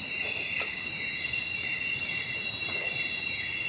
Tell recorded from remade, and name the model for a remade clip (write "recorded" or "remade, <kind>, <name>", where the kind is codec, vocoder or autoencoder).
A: recorded